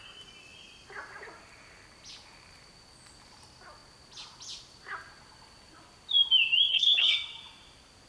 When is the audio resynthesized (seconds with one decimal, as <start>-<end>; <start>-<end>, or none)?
6.7-7.4